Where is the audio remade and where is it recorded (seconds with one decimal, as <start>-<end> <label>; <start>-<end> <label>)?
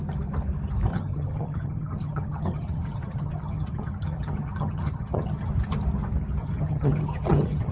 0.0-0.9 recorded; 0.9-5.5 remade; 5.5-6.4 recorded; 6.4-7.7 remade